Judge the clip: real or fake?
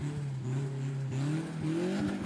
real